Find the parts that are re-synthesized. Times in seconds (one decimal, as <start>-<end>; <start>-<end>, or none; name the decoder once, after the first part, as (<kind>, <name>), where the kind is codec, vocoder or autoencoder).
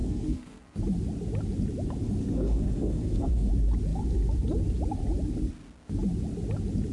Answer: 0.0-0.8 (codec, SNAC); 2.2-3.5